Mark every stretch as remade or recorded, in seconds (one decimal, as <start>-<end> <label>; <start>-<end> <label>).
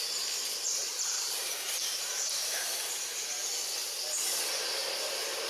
0.0-0.8 recorded; 0.8-2.8 remade; 2.8-5.5 recorded